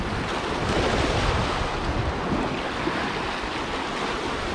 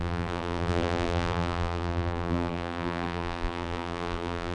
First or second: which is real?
first